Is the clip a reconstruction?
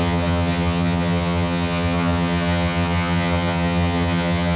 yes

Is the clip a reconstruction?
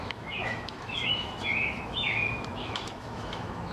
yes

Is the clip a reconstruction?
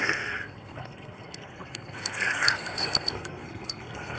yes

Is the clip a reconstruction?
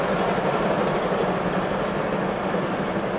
no